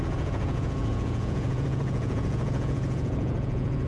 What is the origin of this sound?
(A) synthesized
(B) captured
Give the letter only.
A